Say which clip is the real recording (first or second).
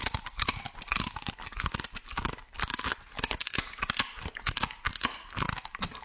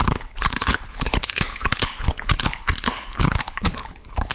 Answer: first